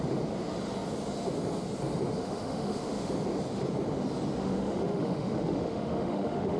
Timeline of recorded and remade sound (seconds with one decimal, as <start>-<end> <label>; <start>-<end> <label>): 0.0-2.2 recorded; 2.2-3.1 remade; 3.1-4.4 recorded; 4.4-6.6 remade